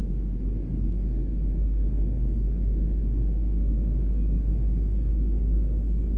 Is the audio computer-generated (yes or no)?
yes